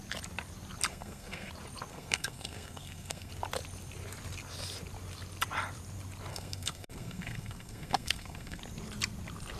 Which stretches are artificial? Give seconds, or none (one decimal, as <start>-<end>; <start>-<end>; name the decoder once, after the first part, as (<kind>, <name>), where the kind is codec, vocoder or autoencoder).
0.9-1.5 (codec, SNAC); 1.9-3.3; 6.3-8.6